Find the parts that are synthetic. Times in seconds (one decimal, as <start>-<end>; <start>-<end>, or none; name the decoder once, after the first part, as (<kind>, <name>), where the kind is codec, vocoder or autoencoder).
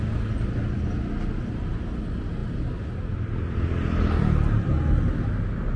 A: none